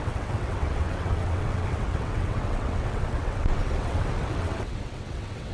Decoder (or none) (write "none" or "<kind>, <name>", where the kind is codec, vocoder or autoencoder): vocoder, WaveNeXt